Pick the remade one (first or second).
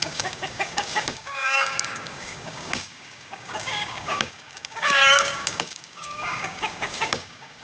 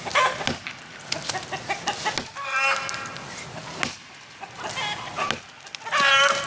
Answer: first